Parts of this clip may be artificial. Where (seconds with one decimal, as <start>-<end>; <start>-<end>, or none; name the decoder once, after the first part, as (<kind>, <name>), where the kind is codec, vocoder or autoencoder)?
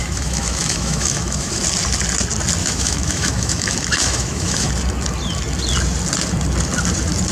0.0-1.6 (autoencoder, DAC-VAE); 2.6-4.7